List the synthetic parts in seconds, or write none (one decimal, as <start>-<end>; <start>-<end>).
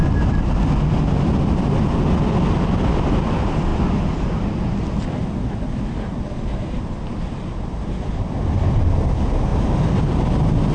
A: none